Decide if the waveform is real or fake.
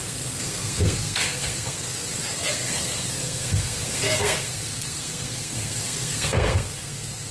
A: fake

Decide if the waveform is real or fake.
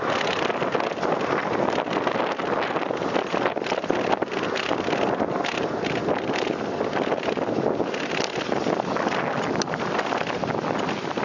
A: real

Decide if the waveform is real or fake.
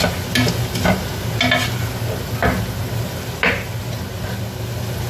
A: real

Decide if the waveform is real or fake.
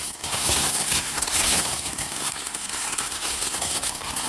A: fake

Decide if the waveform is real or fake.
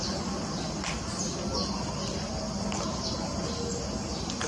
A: real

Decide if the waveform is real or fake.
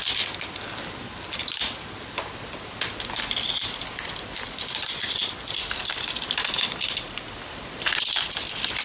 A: real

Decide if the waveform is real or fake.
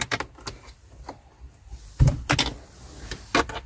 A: real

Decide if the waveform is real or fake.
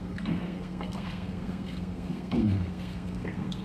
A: fake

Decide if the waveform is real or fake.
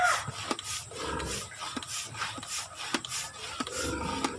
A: real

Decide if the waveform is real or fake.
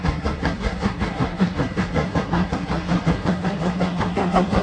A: fake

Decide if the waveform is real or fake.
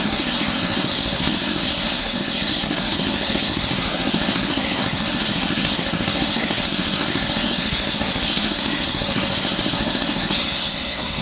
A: fake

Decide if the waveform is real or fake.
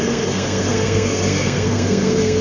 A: fake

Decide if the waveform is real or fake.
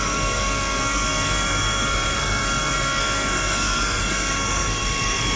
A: fake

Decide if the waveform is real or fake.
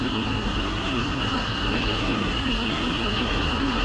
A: fake